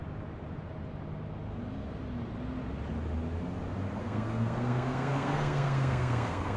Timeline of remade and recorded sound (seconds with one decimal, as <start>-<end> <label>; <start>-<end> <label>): 0.0-4.0 recorded; 4.0-6.6 remade